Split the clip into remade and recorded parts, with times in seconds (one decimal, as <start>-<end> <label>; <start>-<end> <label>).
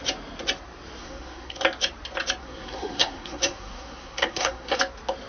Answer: 0.0-1.0 recorded; 1.0-1.6 remade; 1.6-2.4 recorded; 2.4-4.8 remade; 4.8-5.3 recorded